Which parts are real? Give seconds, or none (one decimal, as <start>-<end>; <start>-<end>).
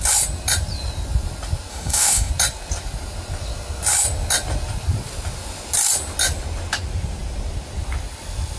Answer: 0.0-1.7; 2.3-8.6